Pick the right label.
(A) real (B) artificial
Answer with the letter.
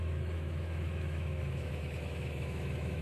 B